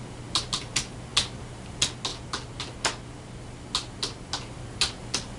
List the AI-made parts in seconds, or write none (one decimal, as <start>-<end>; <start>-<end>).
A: none